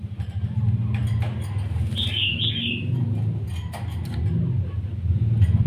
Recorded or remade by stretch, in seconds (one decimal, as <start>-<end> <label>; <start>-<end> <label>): 0.0-5.7 recorded